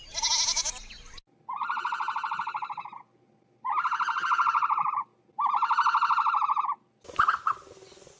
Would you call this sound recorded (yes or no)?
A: yes